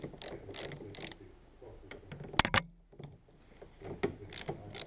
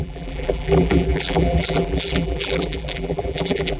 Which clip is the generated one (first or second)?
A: second